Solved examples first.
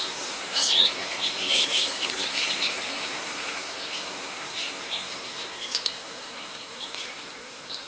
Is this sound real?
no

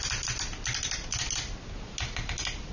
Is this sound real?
yes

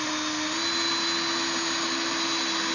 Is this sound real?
yes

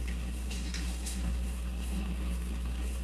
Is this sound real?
no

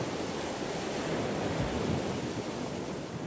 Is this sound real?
yes